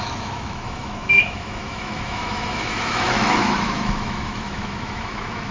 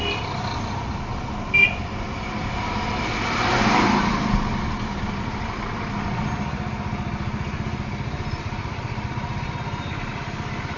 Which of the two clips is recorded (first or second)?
second